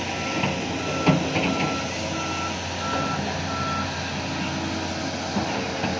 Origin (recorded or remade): recorded